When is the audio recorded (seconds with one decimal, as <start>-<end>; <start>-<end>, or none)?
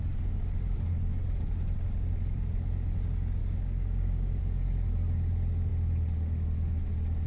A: 0.0-3.4; 4.4-7.3